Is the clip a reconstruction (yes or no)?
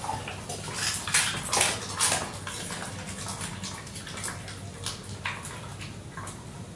no